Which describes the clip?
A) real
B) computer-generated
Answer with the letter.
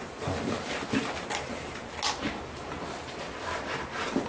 A